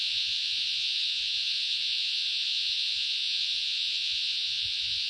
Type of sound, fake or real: fake